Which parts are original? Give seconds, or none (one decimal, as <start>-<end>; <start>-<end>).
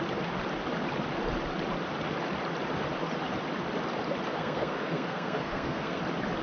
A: 0.0-4.3; 6.0-6.4